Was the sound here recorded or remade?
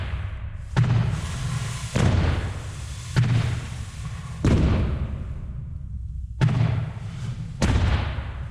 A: recorded